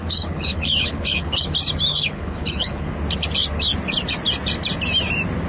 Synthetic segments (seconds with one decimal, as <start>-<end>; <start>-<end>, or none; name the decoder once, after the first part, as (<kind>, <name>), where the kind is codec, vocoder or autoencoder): 0.0-1.4 (codec, HILCodec); 1.9-2.9